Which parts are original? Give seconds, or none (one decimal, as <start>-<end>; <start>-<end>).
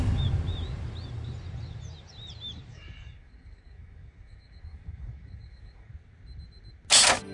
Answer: 0.0-2.7; 5.9-7.3